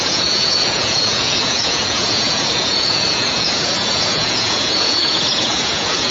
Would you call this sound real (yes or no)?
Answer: no